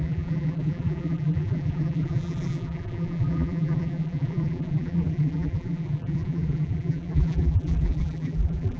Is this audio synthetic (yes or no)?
yes